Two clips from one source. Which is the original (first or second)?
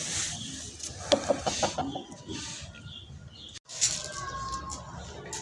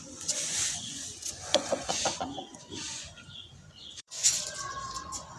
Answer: first